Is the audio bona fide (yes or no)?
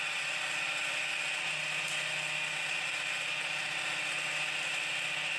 yes